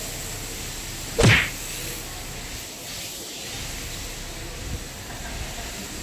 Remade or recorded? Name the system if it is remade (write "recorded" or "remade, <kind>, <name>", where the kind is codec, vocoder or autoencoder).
recorded